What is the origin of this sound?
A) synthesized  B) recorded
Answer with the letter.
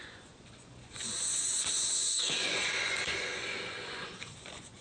A